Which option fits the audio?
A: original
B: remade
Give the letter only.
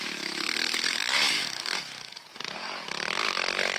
B